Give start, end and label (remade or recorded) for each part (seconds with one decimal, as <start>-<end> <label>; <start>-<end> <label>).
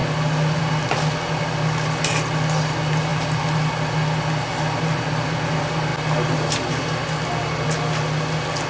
0.0-8.7 recorded